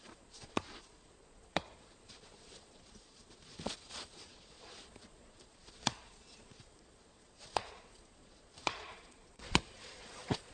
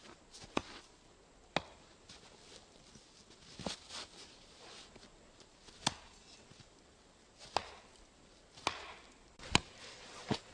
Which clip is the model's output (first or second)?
first